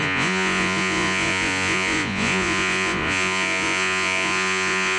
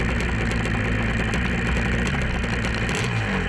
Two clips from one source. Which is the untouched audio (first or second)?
second